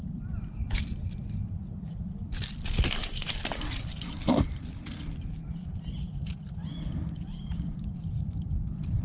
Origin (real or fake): fake